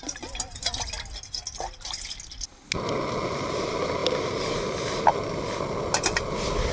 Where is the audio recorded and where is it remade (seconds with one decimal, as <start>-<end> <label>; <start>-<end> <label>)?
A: 0.0-6.7 recorded